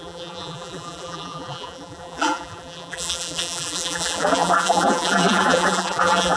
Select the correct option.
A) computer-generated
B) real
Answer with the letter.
A